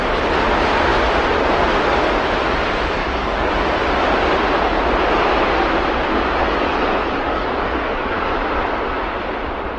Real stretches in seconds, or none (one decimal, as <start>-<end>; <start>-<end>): 0.0-3.0; 3.5-6.4; 8.4-9.8